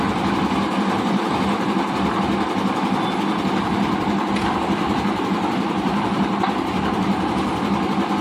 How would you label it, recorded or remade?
recorded